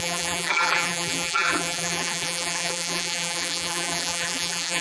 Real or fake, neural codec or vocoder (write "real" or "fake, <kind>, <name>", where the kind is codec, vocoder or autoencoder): fake, vocoder, BigVGAN v2